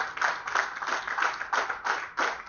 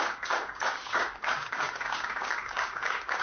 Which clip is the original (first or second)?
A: first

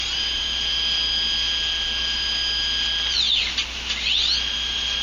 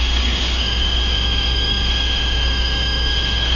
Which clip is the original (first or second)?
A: first